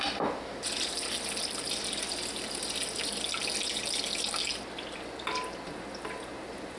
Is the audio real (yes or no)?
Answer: yes